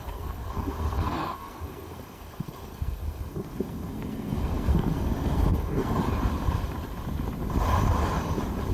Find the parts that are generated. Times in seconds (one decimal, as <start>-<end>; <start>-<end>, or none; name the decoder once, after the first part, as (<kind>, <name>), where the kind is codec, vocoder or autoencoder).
0.0-6.0 (codec, SNAC)